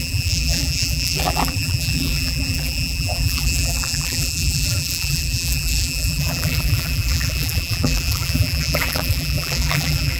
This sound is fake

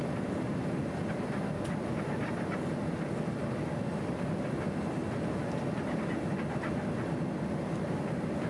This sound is real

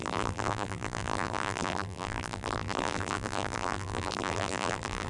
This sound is fake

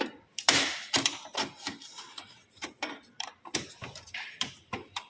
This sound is fake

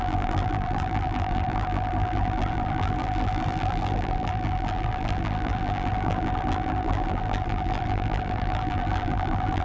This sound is fake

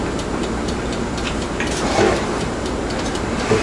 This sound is fake